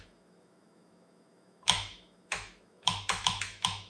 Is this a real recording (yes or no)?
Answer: no